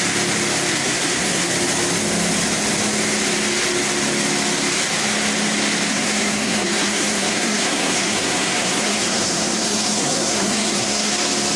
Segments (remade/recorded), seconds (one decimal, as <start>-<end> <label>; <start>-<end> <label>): 0.0-0.7 recorded; 0.7-1.5 remade; 1.5-5.9 recorded; 5.9-11.1 remade; 11.1-11.6 recorded